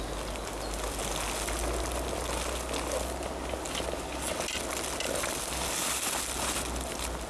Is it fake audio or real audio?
real